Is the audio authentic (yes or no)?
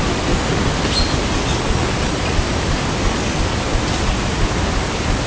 yes